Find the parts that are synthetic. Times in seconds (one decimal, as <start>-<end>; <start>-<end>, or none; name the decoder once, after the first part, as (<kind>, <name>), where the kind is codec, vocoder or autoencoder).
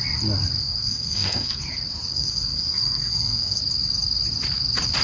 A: 0.6-1.6 (codec, SNAC); 2.1-3.6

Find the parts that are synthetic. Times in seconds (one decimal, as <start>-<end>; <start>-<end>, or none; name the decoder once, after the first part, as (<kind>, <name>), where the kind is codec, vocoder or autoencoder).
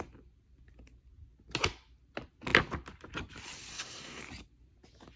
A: 3.7-4.2 (codec, SNAC)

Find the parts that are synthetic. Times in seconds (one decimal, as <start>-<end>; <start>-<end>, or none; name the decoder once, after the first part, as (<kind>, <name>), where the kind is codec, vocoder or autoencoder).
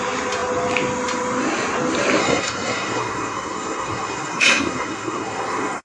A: 2.2-5.8 (codec, SNAC)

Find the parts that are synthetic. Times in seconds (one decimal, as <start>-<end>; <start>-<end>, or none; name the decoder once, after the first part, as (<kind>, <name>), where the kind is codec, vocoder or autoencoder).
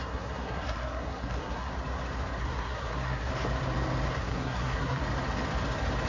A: 0.0-1.7 (codec, SNAC); 2.4-3.3; 4.1-5.0